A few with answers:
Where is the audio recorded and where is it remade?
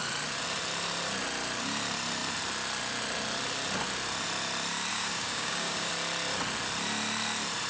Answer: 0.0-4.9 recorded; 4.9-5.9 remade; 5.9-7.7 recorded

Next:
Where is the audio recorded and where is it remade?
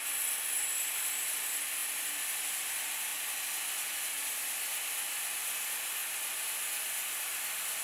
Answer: 0.0-1.8 remade; 1.8-2.6 recorded; 2.6-3.1 remade; 3.1-4.3 recorded; 4.3-6.0 remade; 6.0-7.2 recorded; 7.2-7.8 remade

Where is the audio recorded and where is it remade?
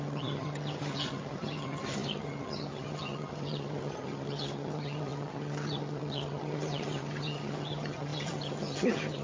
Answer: 0.0-9.2 remade